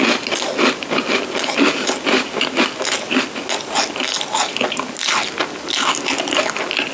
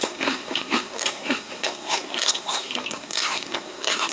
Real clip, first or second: first